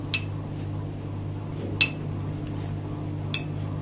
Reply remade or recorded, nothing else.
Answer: recorded